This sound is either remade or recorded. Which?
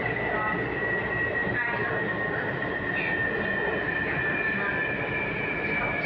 recorded